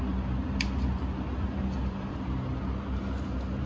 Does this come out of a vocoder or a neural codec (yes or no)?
no